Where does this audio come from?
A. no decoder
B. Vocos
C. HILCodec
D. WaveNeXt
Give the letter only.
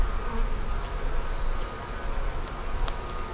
A